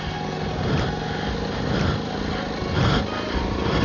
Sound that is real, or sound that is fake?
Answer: real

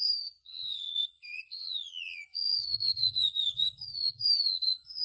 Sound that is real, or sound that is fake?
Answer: fake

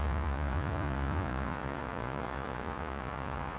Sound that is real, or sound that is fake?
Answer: fake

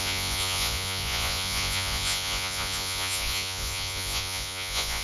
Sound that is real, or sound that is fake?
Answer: fake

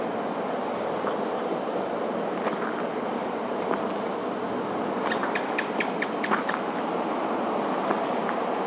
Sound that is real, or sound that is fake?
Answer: real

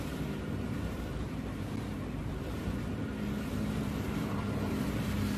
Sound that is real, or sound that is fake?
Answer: fake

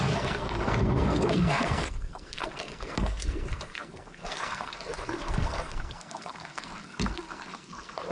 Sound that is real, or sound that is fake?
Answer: fake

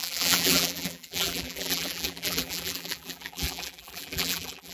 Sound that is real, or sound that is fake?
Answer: fake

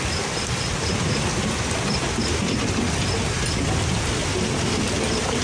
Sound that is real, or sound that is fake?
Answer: real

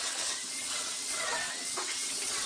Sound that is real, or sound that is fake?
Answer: fake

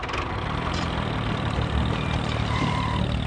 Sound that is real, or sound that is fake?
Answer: fake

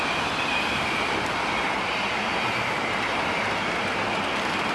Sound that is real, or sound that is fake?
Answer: fake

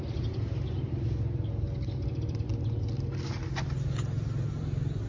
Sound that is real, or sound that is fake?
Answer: real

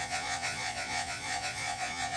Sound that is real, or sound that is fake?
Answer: fake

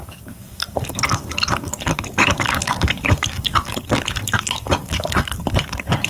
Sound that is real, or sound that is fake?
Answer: fake